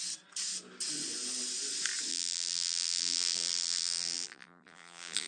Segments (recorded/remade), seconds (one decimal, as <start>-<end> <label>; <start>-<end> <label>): 0.0-2.1 recorded; 2.1-5.3 remade